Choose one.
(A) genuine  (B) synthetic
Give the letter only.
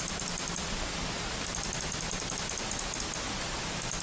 A